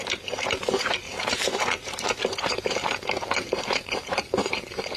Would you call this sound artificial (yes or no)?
yes